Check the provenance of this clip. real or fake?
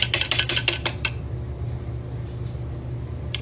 real